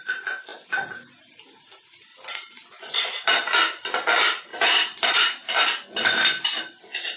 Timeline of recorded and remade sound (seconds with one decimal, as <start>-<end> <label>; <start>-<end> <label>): 0.0-7.2 recorded